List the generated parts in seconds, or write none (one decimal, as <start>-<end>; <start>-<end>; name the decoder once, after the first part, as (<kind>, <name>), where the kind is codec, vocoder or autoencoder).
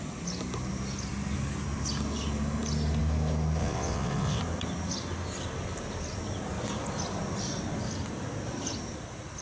3.6-4.4 (vocoder, WaveNeXt)